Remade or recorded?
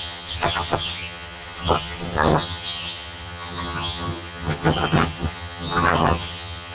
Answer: remade